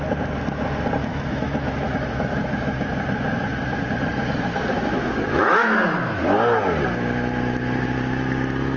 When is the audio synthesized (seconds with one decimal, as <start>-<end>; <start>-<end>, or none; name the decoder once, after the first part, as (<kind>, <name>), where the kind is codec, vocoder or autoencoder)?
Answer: 1.1-2.9 (autoencoder, DAC-VAE); 4.7-6.2

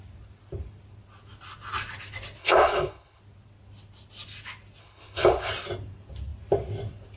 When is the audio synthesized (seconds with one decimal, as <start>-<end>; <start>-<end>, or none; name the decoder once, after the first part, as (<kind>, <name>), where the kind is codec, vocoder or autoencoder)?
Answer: 2.4-3.2 (codec, HILCodec); 4.8-5.5

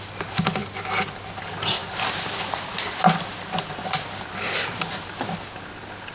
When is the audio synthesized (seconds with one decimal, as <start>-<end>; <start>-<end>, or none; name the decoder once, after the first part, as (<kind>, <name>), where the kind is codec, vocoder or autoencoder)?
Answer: none

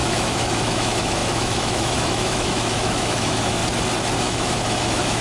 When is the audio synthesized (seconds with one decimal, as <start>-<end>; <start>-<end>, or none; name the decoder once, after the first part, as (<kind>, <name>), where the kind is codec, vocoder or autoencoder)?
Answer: 0.0-3.6 (autoencoder, DAC-VAE); 4.2-5.2

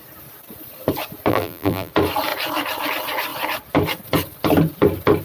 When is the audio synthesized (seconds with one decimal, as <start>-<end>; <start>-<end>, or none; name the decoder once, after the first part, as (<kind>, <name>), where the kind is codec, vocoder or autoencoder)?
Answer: 1.3-1.9 (vocoder, BigVGAN v2)